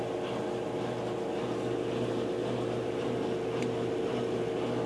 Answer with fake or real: real